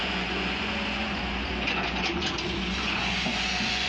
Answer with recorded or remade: remade